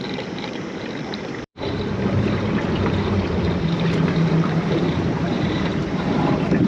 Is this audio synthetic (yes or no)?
yes